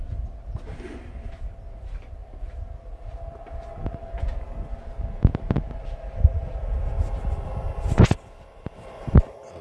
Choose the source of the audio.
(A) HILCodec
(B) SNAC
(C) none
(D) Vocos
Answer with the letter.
C